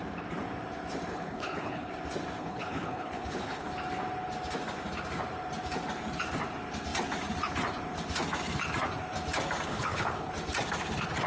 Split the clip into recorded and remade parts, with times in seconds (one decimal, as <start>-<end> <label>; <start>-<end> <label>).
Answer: 0.0-1.1 recorded; 1.1-1.9 remade; 1.9-2.4 recorded; 2.4-3.7 remade; 3.7-9.7 recorded; 9.7-10.3 remade; 10.3-11.3 recorded